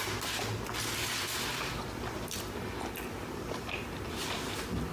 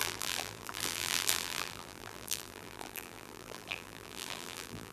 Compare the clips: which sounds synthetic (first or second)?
second